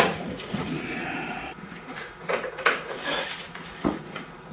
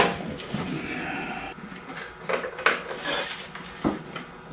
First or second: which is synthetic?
first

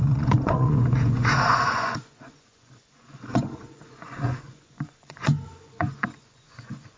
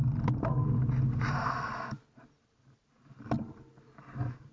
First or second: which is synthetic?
first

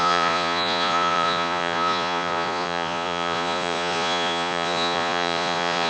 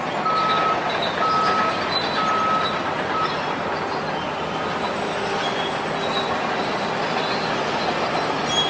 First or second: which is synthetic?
first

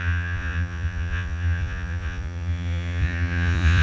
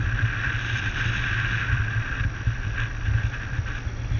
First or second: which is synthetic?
first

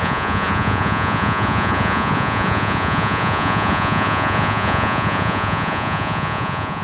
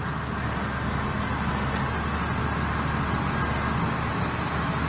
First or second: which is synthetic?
first